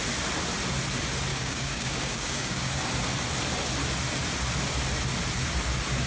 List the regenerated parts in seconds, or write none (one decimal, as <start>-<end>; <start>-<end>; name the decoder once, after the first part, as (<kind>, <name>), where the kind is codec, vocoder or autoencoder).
1.3-2.7 (codec, DAC)